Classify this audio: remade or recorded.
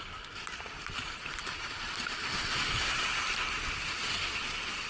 recorded